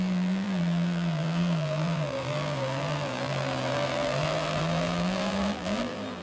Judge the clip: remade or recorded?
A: remade